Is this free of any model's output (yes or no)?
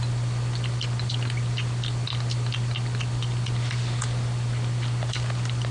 yes